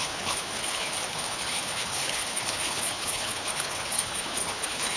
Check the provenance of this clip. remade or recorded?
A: remade